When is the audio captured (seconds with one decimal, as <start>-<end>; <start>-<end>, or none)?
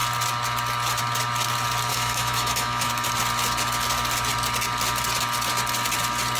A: 0.0-1.9; 2.9-6.4